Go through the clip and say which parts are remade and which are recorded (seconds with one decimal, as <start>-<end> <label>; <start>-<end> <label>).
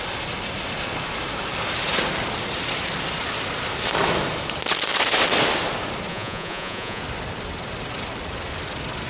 0.0-6.1 recorded; 6.1-7.0 remade; 7.0-9.1 recorded